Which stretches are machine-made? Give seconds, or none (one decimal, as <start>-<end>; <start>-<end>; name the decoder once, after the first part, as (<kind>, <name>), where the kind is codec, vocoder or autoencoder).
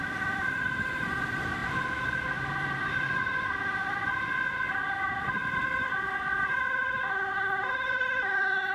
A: 0.0-5.4 (vocoder, BigVGAN v2); 7.9-8.7